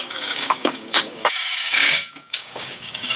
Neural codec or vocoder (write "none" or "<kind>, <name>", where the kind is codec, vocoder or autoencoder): codec, DAC